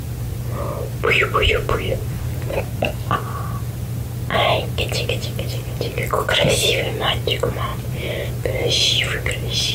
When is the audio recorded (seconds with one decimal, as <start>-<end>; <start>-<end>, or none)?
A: 0.0-1.2; 2.9-7.7; 8.3-9.7